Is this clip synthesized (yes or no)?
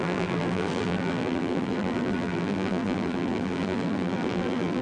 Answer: yes